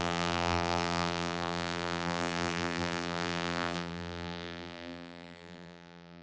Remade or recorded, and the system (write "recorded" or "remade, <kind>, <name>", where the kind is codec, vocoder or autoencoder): remade, vocoder, BigVGAN v2